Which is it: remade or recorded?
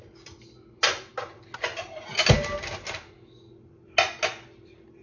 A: recorded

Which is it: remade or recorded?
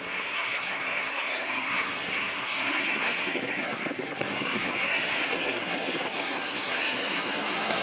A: remade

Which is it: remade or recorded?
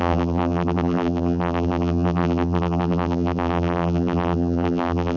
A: remade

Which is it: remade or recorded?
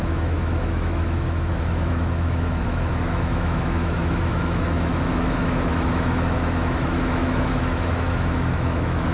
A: remade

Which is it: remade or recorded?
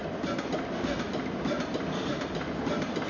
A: recorded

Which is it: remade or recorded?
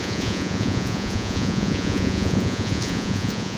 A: remade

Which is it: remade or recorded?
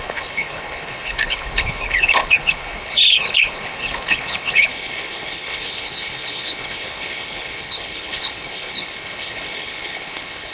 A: remade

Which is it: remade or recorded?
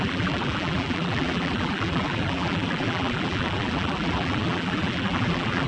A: remade